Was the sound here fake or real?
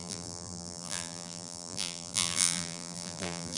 fake